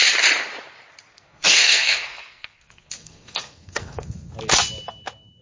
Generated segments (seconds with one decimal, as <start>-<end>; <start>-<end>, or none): 1.1-4.3

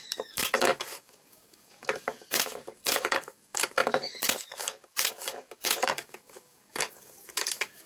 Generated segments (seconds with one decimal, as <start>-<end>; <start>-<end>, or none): 0.0-7.9

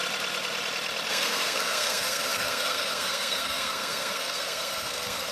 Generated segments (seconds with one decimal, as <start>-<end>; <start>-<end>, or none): 1.1-5.3

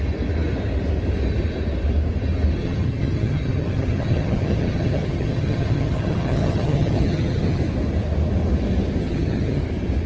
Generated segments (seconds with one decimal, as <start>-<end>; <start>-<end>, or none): 2.6-7.6; 9.0-9.6